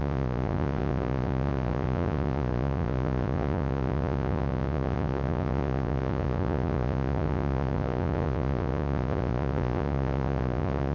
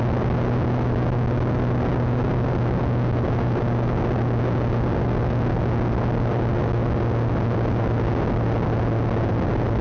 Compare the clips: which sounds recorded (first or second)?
second